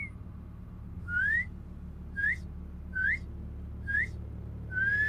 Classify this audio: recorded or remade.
recorded